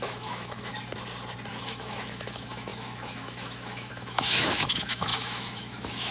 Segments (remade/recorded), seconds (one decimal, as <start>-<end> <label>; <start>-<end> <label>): 0.0-0.7 remade; 0.7-1.5 recorded; 1.5-6.1 remade